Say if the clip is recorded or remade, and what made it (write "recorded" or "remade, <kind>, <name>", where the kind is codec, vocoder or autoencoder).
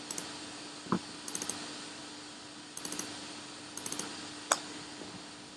recorded